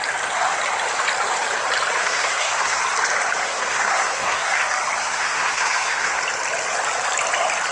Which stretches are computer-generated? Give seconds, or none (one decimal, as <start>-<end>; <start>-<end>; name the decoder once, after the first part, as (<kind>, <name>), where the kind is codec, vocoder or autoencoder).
2.0-2.8 (codec, SNAC); 3.4-4.6; 5.0-6.2